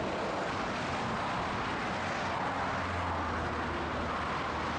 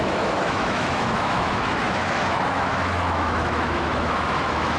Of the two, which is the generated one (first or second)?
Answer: second